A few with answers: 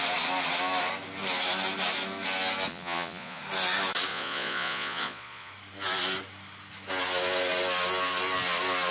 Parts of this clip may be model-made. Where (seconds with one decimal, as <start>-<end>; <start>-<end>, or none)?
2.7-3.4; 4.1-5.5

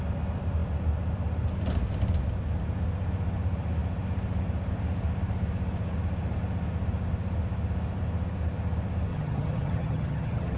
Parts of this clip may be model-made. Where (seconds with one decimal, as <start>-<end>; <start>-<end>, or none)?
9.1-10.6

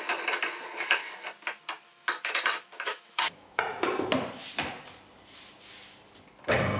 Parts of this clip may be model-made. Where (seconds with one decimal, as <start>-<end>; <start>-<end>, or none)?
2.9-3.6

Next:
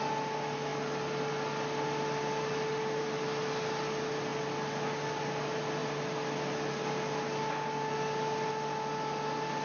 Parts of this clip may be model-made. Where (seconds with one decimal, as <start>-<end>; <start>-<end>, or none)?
none